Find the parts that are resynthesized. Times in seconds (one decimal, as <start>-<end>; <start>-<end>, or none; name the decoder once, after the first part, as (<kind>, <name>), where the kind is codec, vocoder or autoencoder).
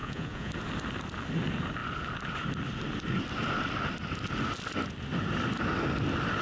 0.0-0.5 (vocoder, Vocos)